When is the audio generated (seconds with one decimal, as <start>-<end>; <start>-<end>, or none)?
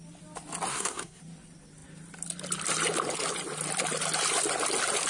0.7-1.2